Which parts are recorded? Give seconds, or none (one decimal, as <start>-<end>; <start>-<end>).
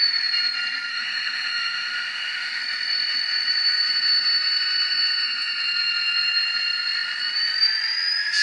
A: 0.0-0.9; 2.6-8.4